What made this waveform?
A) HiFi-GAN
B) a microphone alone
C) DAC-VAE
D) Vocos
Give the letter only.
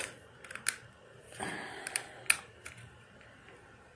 B